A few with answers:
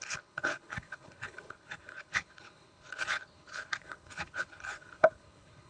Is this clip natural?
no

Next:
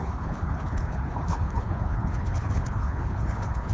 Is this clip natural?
no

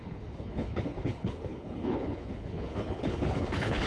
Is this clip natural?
no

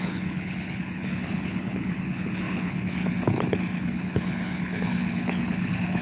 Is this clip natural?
no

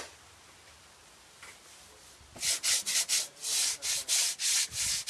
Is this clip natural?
yes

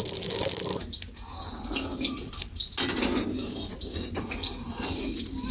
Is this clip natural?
yes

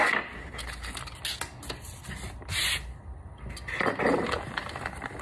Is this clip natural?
yes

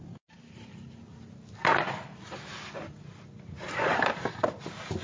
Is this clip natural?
yes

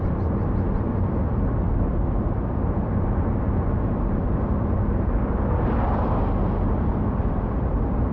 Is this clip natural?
yes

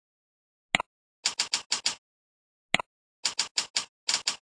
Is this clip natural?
yes